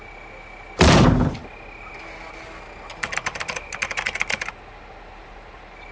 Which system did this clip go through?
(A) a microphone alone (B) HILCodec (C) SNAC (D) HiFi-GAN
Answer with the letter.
A